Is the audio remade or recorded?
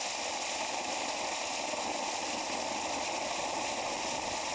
recorded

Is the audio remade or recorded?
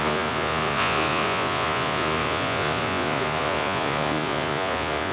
remade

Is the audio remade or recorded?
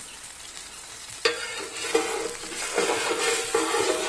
recorded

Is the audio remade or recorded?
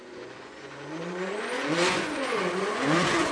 remade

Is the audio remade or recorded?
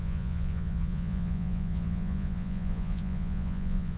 remade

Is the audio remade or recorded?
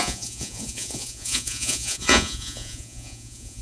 remade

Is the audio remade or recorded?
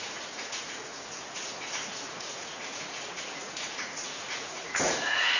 remade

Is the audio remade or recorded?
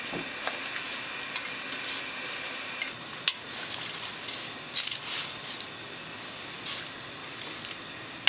recorded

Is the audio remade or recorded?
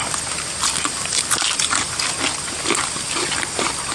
recorded